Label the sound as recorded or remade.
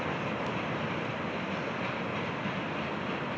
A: recorded